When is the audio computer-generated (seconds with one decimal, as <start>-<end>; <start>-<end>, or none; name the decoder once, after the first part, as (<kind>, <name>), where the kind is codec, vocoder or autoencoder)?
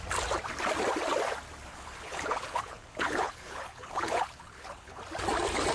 1.7-5.0 (codec, HILCodec)